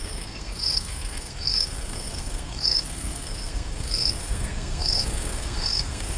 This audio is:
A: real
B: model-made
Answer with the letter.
B